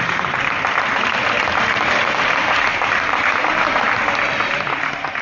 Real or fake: real